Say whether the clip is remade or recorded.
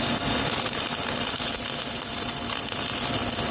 recorded